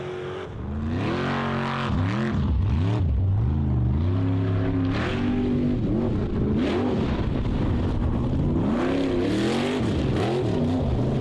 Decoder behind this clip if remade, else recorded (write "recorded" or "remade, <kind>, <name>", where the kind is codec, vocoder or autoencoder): recorded